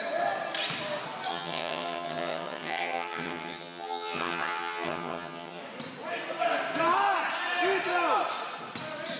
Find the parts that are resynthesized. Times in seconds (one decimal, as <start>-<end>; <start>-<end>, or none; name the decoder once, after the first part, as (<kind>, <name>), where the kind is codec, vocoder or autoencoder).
1.3-5.6 (vocoder, HiFi-GAN)